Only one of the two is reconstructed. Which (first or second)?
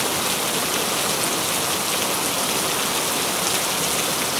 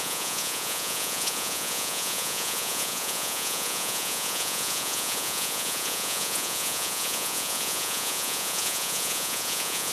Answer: second